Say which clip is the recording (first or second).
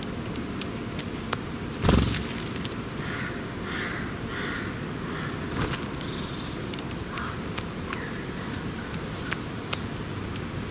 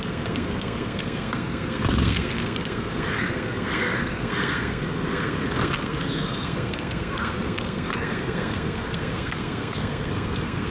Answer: first